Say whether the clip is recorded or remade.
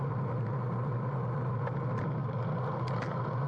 recorded